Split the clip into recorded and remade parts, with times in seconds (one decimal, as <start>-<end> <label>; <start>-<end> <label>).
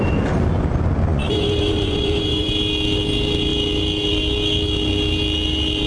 0.0-1.1 recorded; 1.1-2.5 remade; 2.5-5.9 recorded